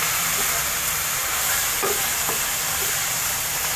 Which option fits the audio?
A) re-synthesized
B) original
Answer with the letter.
A